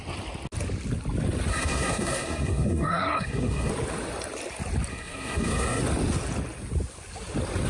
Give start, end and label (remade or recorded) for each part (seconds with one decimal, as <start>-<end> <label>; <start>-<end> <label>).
0.0-1.5 recorded; 1.5-3.7 remade; 3.7-4.9 recorded; 4.9-5.8 remade; 5.8-7.7 recorded

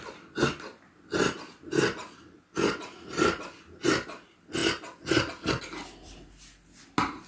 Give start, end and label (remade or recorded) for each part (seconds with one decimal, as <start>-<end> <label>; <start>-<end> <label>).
0.0-7.3 recorded

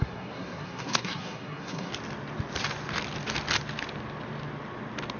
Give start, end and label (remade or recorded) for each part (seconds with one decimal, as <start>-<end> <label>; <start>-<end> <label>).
0.0-1.9 remade; 1.9-5.2 recorded

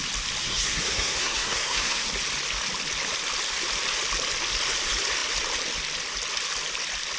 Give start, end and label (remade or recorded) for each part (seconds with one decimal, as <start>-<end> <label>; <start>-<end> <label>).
0.0-0.4 recorded; 0.4-2.1 remade; 2.1-7.2 recorded

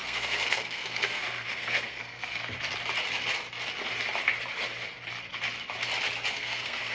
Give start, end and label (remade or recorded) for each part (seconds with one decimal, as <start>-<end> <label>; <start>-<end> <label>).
0.0-2.4 remade; 2.4-6.3 recorded; 6.3-6.9 remade

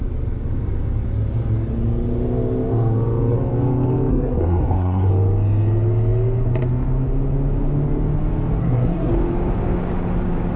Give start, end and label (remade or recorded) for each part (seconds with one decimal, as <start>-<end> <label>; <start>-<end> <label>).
0.0-4.1 recorded; 4.1-5.1 remade; 5.1-8.6 recorded; 8.6-9.1 remade; 9.1-10.6 recorded

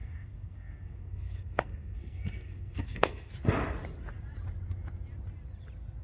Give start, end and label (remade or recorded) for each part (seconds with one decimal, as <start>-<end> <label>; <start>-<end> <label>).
0.0-3.3 remade; 3.3-6.0 recorded

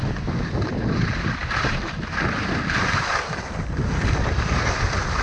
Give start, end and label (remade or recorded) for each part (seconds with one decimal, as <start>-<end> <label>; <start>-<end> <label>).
0.0-5.2 recorded